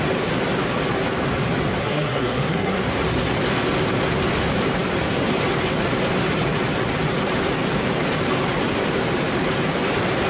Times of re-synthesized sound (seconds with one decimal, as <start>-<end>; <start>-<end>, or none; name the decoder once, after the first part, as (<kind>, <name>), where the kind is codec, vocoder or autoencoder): 1.8-2.8 (codec, SNAC)